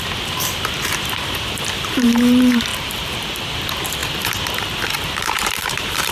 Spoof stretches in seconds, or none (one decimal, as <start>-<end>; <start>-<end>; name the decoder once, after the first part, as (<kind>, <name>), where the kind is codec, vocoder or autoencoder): 0.0-4.0 (vocoder, BigVGAN v2); 5.0-6.1